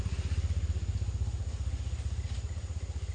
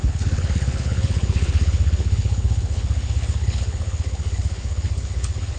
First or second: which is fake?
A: second